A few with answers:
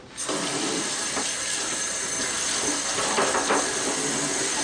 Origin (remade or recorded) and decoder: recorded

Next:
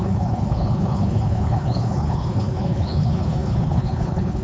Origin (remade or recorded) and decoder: remade, codec, HILCodec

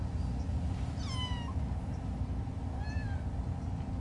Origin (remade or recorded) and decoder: recorded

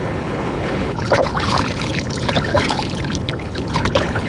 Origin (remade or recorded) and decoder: remade, codec, HILCodec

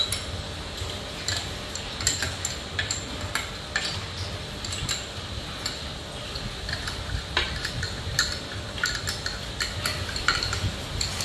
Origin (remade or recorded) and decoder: recorded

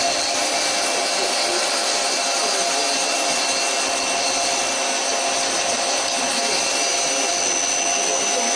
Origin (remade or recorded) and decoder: recorded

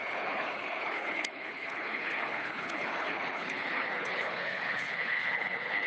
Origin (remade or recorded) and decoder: remade, codec, HILCodec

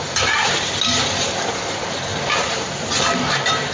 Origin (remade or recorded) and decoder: recorded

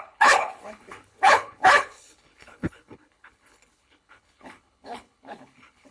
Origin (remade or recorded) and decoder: remade, codec, HILCodec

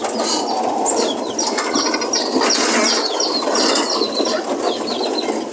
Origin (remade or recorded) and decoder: recorded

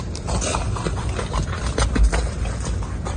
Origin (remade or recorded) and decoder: recorded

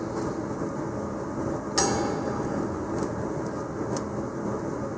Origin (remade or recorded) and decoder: recorded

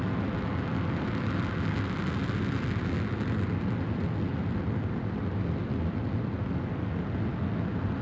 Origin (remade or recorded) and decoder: recorded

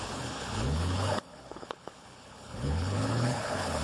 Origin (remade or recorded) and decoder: remade, codec, HILCodec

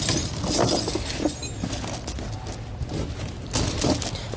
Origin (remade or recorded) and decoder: recorded